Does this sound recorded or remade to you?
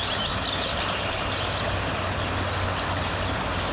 recorded